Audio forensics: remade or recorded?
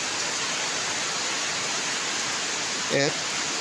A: recorded